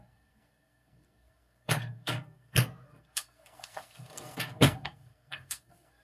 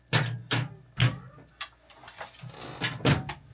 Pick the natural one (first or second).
second